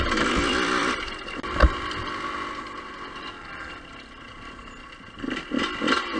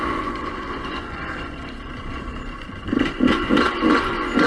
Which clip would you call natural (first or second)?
first